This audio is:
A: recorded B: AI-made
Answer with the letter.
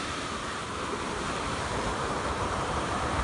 B